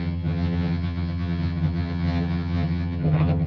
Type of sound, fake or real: fake